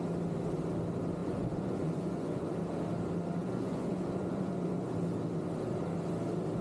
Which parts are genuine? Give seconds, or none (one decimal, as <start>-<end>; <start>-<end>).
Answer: 0.0-1.2; 2.4-3.4; 4.9-6.6